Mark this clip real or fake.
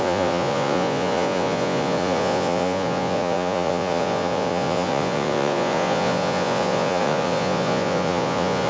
fake